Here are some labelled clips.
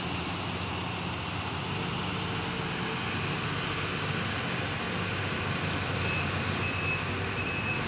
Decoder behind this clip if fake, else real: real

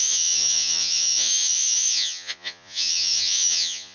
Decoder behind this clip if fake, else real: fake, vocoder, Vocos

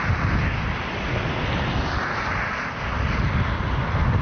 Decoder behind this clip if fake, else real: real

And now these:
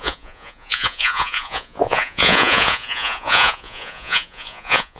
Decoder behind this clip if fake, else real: fake, vocoder, Vocos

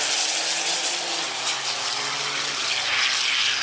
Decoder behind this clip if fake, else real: real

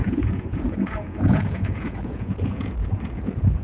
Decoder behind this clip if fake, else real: fake, vocoder, Vocos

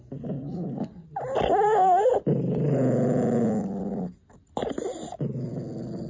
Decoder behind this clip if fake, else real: real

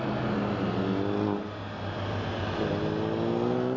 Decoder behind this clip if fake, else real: real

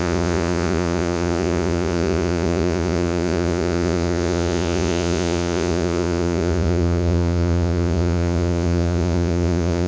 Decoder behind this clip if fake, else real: fake, vocoder, Vocos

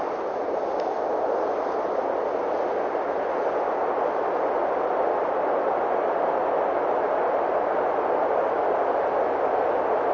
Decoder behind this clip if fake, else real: real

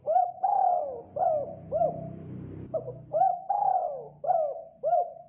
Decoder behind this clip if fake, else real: real